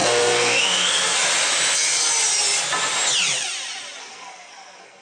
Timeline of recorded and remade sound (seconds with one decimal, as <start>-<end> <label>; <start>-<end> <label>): 0.0-1.2 remade; 1.2-4.0 recorded; 4.0-5.0 remade